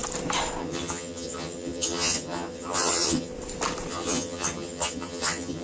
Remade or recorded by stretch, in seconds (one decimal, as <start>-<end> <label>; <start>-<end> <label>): 0.0-0.6 recorded; 0.6-3.3 remade; 3.3-3.9 recorded; 3.9-5.6 remade